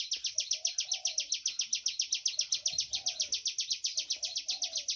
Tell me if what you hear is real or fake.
real